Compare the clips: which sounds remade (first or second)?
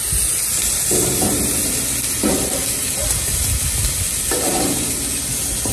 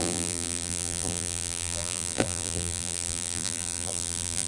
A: second